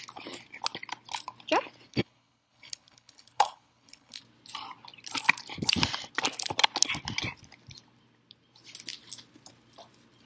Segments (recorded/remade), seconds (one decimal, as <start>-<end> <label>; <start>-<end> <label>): 0.0-1.9 recorded; 1.9-4.2 remade; 4.2-10.3 recorded